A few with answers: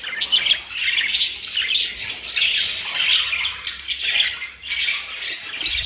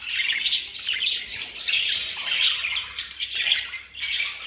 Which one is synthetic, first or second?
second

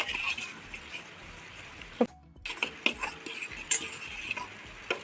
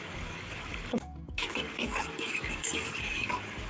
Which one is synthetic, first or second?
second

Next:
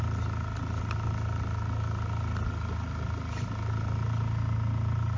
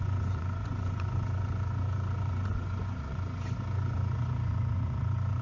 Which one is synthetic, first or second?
second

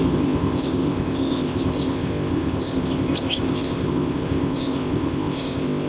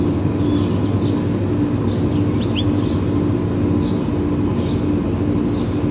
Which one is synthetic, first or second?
first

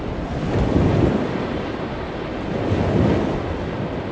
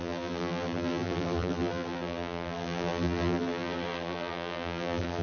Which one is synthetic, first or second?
second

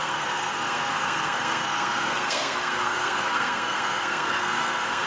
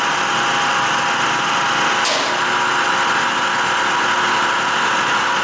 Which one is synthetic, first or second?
first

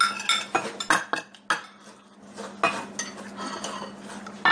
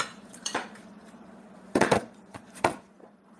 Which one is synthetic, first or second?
second